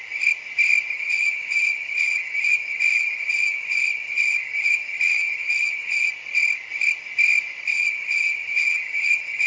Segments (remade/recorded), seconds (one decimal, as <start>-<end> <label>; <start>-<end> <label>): 0.0-0.9 recorded; 0.9-6.1 remade; 6.1-7.7 recorded; 7.7-9.5 remade